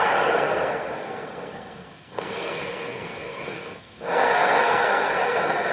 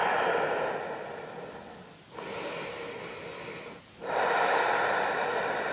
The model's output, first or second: first